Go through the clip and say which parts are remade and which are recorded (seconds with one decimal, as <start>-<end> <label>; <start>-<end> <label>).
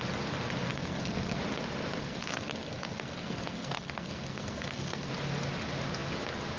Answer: 0.0-0.7 recorded; 0.7-1.4 remade; 1.4-2.0 recorded; 2.0-5.1 remade; 5.1-6.6 recorded